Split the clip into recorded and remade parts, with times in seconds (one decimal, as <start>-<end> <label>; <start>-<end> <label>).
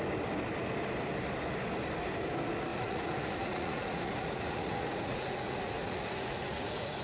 0.0-2.7 recorded; 2.7-7.0 remade